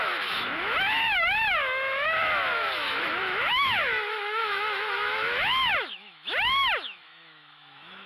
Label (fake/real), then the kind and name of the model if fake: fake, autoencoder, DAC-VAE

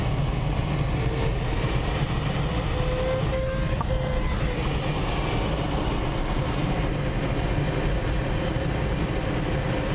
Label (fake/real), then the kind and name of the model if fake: real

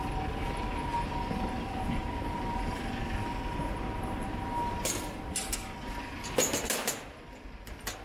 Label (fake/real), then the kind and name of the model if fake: real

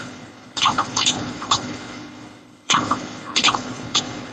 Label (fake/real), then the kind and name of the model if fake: fake, codec, HILCodec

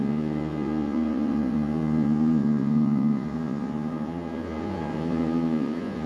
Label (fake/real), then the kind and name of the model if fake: fake, vocoder, Vocos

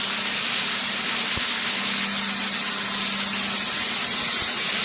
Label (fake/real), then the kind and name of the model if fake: real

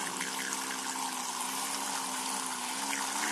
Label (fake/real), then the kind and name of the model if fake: real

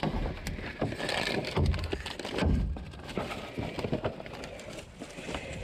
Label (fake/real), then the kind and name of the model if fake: real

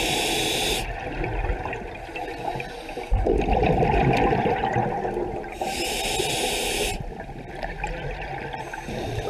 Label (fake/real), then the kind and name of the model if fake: real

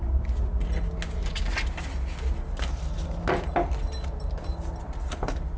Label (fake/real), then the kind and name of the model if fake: real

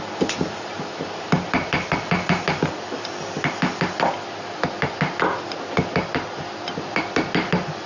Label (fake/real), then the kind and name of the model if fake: real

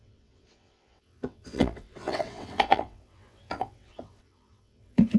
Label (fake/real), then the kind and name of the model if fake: fake, vocoder, WaveNeXt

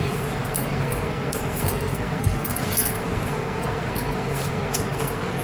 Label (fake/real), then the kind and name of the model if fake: fake, codec, SNAC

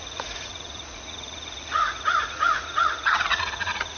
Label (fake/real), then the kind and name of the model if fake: fake, vocoder, Vocos